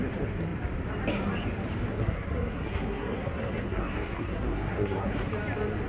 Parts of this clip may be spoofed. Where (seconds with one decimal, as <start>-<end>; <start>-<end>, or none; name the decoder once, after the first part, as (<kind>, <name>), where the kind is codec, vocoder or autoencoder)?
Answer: 1.9-5.3 (codec, SNAC)